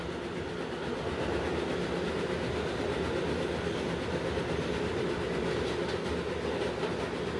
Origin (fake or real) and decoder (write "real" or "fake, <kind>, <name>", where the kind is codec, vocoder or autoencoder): real